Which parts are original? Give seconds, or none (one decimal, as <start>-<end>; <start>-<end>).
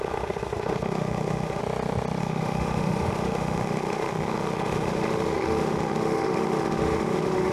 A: 1.6-2.2